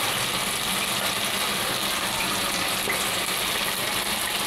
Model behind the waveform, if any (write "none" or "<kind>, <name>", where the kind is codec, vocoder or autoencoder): none